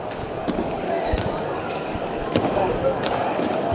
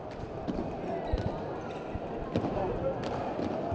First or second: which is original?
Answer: second